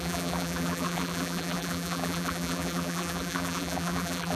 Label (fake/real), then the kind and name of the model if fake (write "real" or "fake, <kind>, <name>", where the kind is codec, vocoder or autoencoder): fake, vocoder, BigVGAN v2